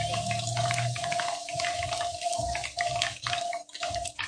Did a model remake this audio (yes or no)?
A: yes